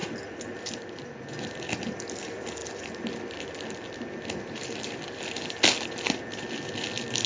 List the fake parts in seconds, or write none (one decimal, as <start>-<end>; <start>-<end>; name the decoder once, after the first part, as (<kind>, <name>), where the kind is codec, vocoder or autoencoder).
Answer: none